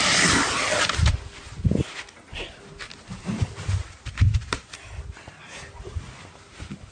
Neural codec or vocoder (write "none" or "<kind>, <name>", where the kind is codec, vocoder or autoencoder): none